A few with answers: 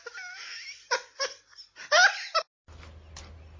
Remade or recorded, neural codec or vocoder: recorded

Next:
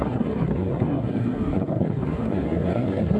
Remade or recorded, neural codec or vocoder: remade, codec, SNAC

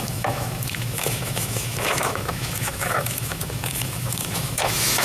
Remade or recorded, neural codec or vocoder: remade, autoencoder, DAC-VAE